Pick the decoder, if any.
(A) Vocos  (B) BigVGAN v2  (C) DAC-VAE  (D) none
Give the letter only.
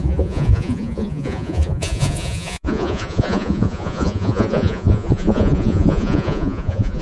A